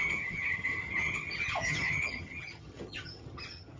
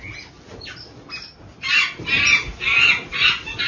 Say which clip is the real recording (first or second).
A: second